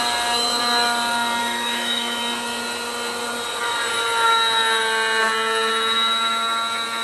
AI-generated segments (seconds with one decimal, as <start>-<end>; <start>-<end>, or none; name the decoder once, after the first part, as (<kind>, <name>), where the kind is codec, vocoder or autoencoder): 1.4-2.2 (autoencoder, DAC-VAE)